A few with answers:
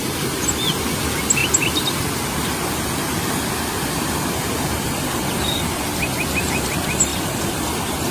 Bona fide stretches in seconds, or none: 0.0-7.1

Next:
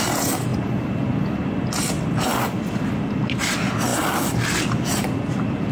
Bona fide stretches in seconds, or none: none

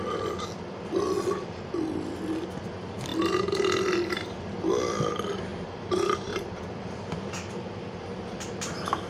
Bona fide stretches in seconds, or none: 0.0-5.5; 6.6-9.1